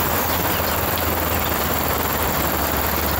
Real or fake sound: real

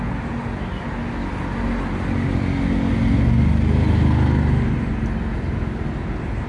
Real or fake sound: real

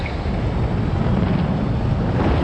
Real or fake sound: real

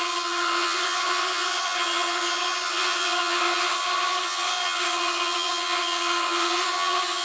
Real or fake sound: fake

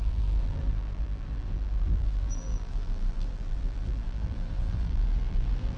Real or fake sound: fake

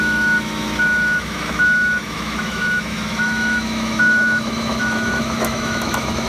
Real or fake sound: fake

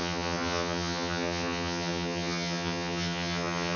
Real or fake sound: fake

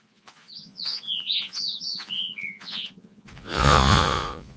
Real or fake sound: fake